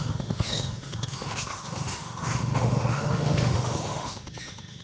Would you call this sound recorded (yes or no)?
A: no